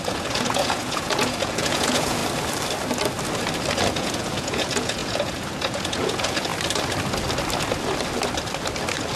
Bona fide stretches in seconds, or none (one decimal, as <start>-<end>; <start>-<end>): 2.2-3.9; 6.5-9.2